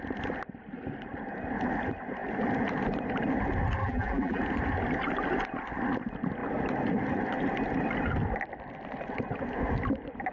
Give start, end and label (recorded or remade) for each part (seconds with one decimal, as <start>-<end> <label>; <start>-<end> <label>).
0.0-3.8 recorded; 3.8-4.4 remade; 4.4-10.3 recorded